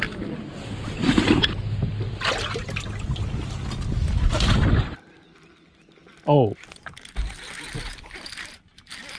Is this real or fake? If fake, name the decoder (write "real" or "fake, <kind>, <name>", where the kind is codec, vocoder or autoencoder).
real